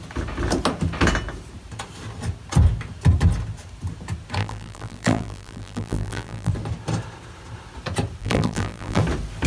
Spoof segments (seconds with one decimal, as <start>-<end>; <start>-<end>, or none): 4.4-6.5; 8.2-9.0